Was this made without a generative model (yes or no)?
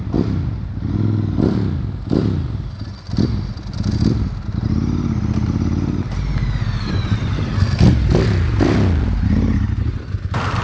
yes